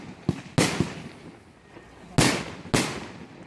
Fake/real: real